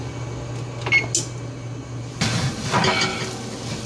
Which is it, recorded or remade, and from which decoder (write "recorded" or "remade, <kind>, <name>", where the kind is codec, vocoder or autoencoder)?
recorded